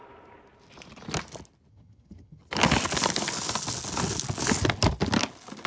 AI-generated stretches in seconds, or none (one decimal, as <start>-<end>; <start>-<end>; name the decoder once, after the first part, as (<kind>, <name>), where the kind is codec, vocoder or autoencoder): 1.7-2.4 (vocoder, HiFi-GAN)